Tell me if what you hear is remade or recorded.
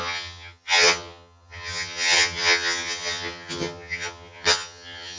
remade